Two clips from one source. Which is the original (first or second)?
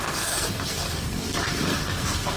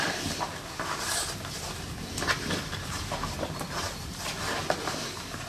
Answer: second